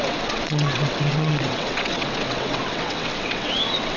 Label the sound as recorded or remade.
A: remade